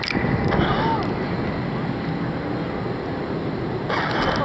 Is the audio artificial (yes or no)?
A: no